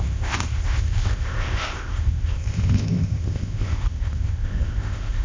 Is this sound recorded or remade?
remade